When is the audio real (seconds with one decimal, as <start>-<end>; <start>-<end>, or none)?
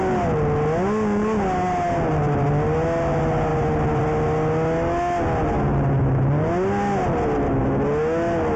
0.0-8.6